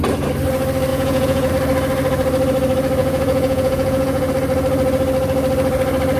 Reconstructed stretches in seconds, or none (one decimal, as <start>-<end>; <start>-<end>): 0.9-1.5; 3.0-4.3